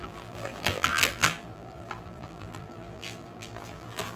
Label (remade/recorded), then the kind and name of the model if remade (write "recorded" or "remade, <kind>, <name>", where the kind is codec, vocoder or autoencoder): remade, vocoder, BigVGAN v2